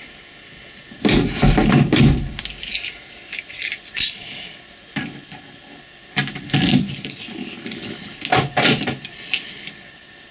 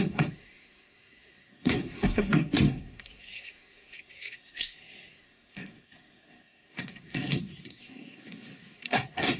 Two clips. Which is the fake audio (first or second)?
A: second